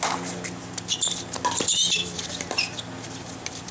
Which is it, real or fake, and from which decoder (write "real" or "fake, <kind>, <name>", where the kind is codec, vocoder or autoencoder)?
real